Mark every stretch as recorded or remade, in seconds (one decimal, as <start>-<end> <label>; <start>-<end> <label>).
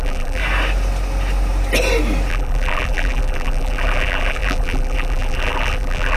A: 0.0-0.4 remade; 0.4-2.3 recorded; 2.3-6.2 remade